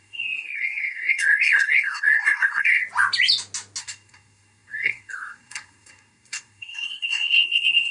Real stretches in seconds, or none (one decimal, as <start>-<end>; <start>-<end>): 2.8-3.8